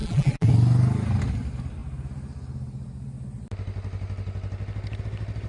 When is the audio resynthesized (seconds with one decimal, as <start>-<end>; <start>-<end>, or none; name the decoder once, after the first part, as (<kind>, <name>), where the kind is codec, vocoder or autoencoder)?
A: 0.0-0.5 (vocoder, BigVGAN v2)